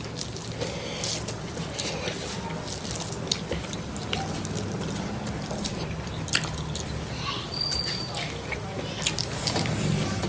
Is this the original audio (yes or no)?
yes